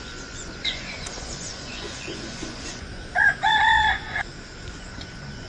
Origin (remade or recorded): remade